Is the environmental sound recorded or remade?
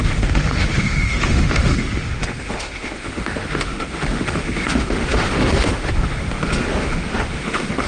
remade